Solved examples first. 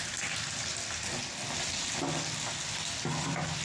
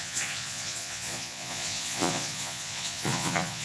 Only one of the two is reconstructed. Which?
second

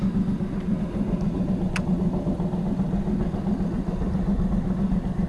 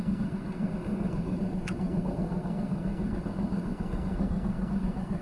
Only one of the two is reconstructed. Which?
second